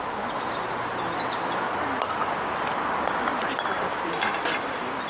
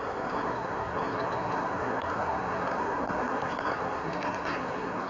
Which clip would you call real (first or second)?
first